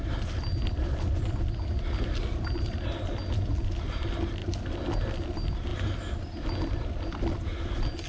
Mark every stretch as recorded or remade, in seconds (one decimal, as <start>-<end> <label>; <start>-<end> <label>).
0.0-8.1 recorded